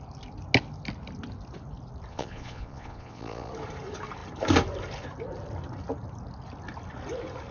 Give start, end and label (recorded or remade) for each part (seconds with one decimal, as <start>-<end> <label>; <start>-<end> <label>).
0.0-2.1 recorded; 2.1-3.5 remade; 3.5-7.5 recorded